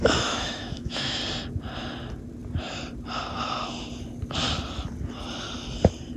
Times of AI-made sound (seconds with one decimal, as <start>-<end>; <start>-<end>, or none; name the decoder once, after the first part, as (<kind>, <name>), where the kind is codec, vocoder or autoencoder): 0.0-1.2 (autoencoder, DAC-VAE)